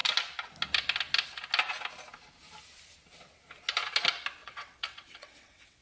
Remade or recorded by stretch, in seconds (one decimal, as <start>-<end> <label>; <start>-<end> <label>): 0.0-4.4 recorded; 4.4-5.8 remade